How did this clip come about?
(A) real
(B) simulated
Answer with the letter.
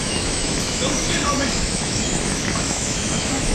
B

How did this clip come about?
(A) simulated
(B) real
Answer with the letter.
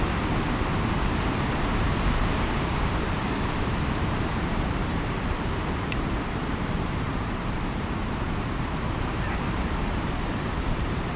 A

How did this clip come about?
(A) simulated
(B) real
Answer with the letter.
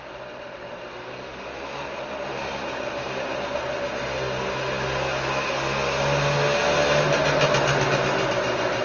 B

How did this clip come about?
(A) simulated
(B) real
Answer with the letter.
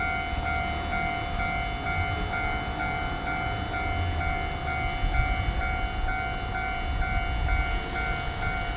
B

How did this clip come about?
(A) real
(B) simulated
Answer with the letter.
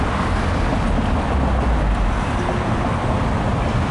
A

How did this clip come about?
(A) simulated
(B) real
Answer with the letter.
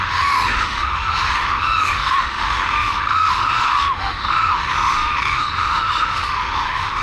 A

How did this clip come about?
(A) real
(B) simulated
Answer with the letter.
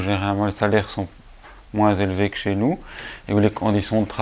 A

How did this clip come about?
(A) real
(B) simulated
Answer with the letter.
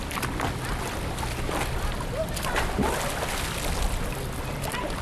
A